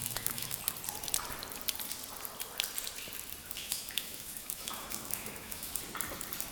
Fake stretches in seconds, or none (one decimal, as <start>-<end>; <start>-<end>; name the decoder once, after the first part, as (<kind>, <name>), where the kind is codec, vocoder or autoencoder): 0.0-0.6 (autoencoder, DAC-VAE); 3.4-5.8